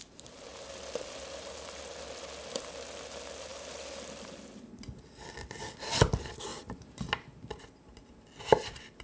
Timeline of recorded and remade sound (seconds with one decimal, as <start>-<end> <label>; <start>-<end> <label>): 0.0-0.5 recorded; 0.5-1.8 remade; 1.8-3.5 recorded; 3.5-6.1 remade; 6.1-6.5 recorded; 6.5-7.0 remade; 7.0-9.0 recorded